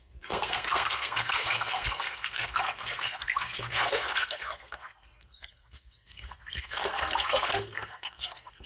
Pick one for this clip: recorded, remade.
remade